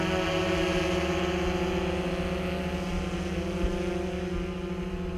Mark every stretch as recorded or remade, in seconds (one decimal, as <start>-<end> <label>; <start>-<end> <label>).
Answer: 0.0-5.2 recorded

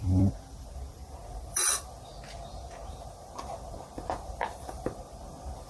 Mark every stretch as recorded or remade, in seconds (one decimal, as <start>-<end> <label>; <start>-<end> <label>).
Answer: 0.0-2.1 remade; 2.1-2.9 recorded; 2.9-5.7 remade

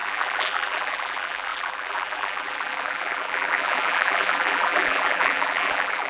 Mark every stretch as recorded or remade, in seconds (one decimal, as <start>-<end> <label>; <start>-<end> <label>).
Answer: 0.0-6.1 remade

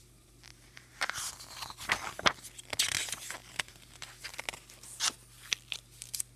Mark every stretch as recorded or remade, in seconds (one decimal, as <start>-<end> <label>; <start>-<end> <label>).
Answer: 0.0-0.5 recorded; 0.5-1.3 remade; 1.3-3.4 recorded; 3.4-4.2 remade; 4.2-6.4 recorded

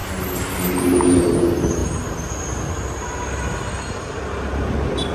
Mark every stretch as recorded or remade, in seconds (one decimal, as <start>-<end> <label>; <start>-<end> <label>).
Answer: 0.0-5.1 recorded

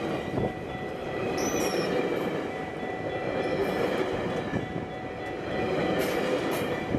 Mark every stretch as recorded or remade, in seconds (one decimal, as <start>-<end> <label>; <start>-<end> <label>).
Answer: 0.0-1.0 recorded; 1.0-2.7 remade; 2.7-7.0 recorded

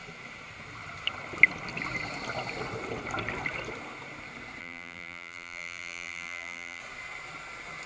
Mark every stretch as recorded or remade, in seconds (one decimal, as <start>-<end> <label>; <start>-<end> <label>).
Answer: 0.0-4.6 recorded; 4.6-6.8 remade; 6.8-7.9 recorded